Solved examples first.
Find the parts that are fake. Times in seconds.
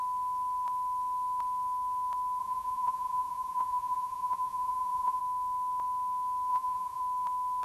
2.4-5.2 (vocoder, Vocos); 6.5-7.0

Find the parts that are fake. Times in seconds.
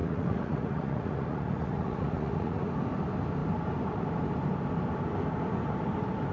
0.0-2.7 (vocoder, Vocos)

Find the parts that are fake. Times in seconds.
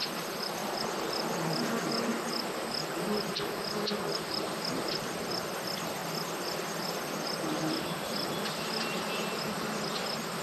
0.0-2.1 (vocoder, BigVGAN v2); 2.8-6.0; 7.5-10.4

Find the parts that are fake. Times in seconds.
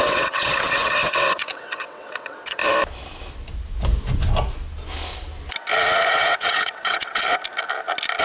0.0-2.6 (vocoder, WaveNeXt); 6.1-7.2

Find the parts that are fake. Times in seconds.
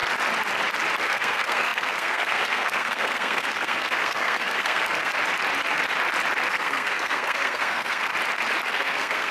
1.0-5.1 (codec, SNAC); 6.5-8.1; 8.7-9.3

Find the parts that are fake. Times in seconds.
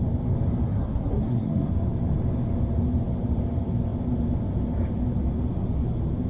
0.7-1.7 (codec, SNAC)